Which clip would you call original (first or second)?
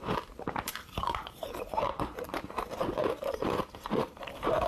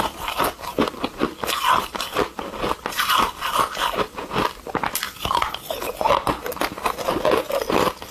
second